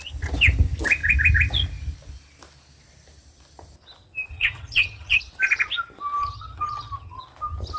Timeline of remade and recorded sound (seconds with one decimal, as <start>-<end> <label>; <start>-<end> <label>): 0.0-4.3 recorded; 4.3-5.2 remade; 5.2-6.2 recorded; 6.2-7.2 remade; 7.2-7.8 recorded